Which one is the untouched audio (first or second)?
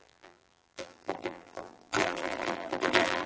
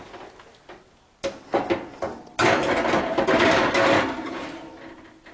second